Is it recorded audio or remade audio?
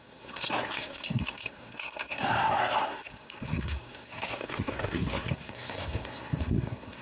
remade